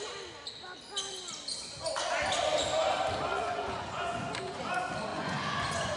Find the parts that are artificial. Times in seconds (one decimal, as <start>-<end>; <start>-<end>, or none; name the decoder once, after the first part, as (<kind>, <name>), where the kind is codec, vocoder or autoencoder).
3.3-4.6 (vocoder, Vocos); 5.1-6.0